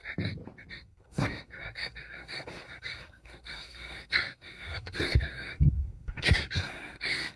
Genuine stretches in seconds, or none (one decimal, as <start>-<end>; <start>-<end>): 0.0-0.7